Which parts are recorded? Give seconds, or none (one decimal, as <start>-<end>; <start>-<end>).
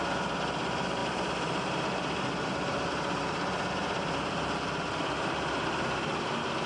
0.0-6.7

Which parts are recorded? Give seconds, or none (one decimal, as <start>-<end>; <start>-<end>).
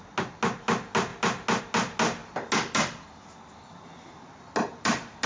0.0-5.3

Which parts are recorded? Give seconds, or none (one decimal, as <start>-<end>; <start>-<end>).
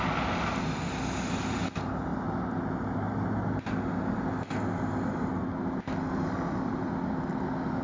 0.0-7.8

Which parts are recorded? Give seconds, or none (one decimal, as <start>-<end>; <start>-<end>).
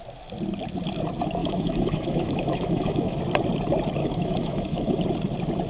0.0-1.4; 3.2-4.0; 5.0-5.7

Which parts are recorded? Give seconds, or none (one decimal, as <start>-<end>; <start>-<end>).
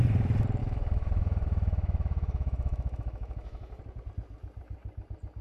0.0-0.6; 3.8-5.4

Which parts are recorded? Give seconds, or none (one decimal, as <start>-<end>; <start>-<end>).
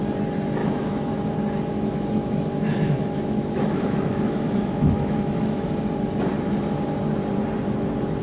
0.0-0.6; 1.1-1.7; 5.8-8.2